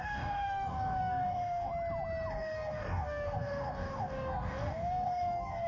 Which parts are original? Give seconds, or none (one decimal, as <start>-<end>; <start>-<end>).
1.7-2.3